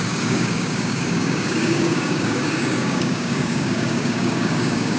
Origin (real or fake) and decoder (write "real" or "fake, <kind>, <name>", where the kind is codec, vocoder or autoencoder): fake, codec, DAC